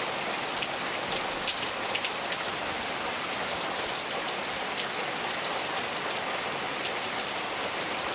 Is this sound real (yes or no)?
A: yes